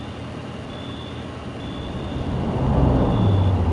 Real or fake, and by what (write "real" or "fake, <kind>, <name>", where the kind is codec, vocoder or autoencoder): real